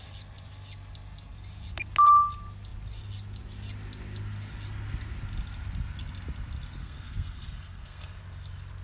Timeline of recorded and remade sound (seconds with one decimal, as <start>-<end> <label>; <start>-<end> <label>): 0.0-6.8 recorded; 6.8-8.2 remade; 8.2-8.8 recorded